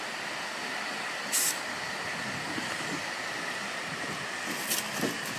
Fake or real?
real